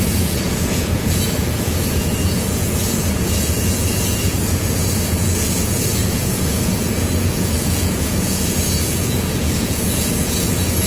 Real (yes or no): no